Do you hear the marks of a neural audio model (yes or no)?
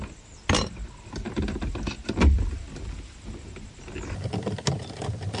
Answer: no